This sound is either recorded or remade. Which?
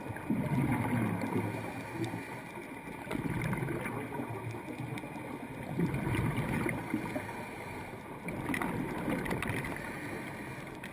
recorded